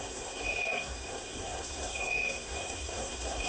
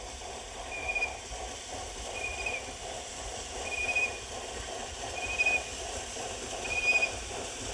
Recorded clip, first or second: second